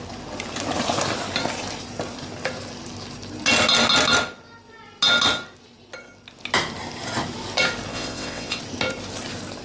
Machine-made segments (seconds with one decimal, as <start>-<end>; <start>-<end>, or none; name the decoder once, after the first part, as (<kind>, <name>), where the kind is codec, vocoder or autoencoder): 7.9-8.6 (vocoder, WaveNeXt)